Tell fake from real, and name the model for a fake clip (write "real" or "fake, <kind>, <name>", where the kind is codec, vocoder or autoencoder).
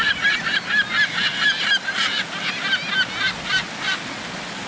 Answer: real